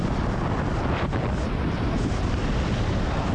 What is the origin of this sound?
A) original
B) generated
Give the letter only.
A